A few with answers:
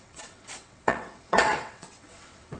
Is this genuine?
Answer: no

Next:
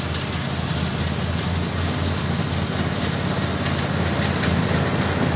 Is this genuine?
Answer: yes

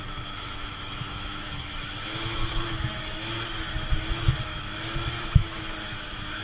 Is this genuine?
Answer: no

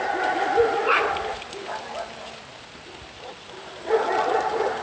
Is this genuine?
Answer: yes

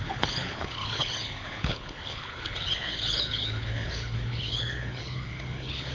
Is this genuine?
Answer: no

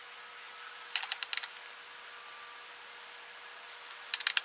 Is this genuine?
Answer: yes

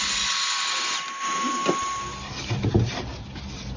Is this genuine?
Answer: yes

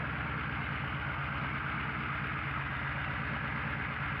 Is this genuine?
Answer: yes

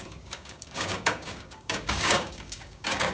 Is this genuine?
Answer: no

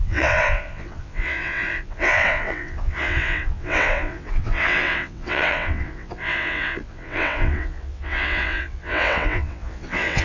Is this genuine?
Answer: no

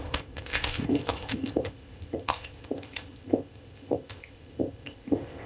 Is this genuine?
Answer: no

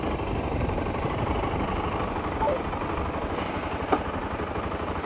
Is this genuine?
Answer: yes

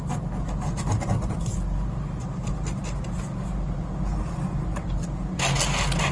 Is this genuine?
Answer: yes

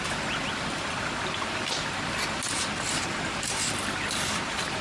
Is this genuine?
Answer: yes